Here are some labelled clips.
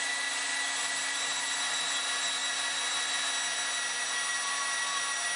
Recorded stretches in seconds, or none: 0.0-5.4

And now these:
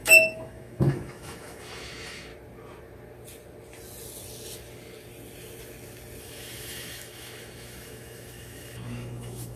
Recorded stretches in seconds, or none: 2.3-6.2

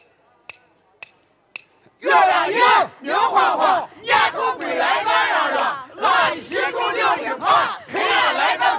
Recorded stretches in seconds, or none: 0.0-8.8

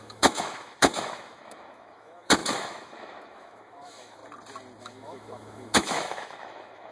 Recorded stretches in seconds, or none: 4.2-4.8

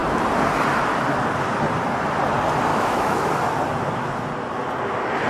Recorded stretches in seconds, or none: 0.0-2.7; 3.3-5.3

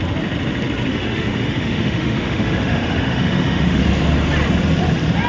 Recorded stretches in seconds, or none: 0.0-0.9; 3.8-5.3

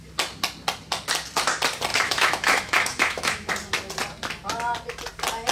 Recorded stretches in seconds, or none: 0.0-1.9; 3.5-5.5

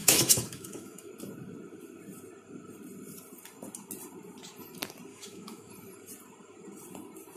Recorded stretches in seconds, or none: 1.1-5.1; 5.7-7.4